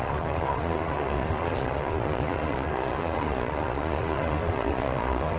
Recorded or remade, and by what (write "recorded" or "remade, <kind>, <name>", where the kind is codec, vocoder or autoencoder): remade, vocoder, Vocos